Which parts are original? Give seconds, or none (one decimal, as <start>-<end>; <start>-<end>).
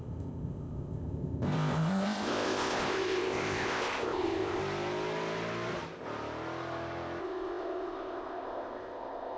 4.6-7.2